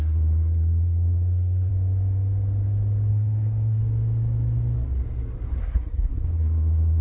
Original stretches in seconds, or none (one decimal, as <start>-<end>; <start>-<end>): 1.7-3.1; 3.8-5.6